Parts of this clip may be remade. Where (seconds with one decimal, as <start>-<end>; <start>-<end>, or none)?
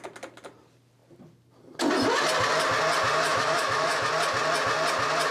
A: 3.3-4.1